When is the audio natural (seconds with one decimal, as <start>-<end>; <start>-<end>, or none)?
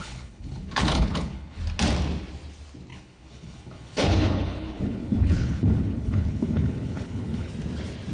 1.6-2.9; 7.5-8.1